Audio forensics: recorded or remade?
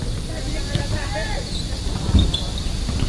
remade